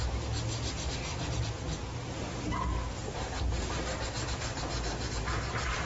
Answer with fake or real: real